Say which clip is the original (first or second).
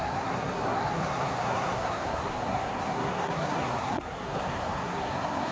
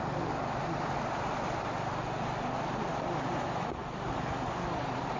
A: second